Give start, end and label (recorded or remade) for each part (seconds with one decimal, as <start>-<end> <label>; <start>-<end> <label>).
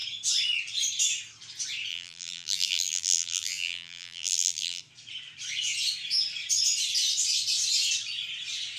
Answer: 0.0-1.9 recorded; 1.9-4.8 remade; 4.8-8.8 recorded